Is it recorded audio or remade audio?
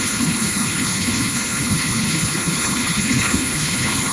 remade